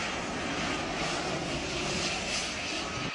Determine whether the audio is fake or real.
real